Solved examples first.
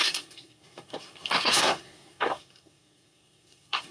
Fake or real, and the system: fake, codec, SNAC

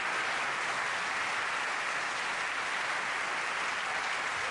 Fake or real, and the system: real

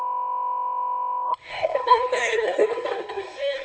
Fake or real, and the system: fake, codec, SNAC